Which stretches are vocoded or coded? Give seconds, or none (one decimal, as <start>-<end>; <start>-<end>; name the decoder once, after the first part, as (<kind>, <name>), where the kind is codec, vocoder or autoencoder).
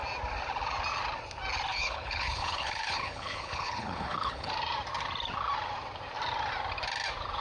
1.7-4.5 (codec, HILCodec)